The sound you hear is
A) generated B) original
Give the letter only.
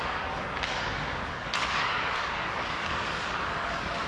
A